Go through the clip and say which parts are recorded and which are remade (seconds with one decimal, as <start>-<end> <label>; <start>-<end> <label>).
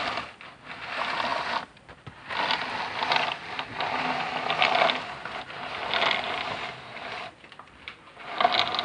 0.0-8.8 recorded